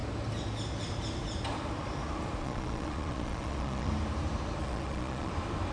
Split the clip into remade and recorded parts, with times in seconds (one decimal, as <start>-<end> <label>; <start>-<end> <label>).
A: 0.0-2.4 recorded; 2.4-3.9 remade; 3.9-4.6 recorded; 4.6-5.3 remade; 5.3-5.7 recorded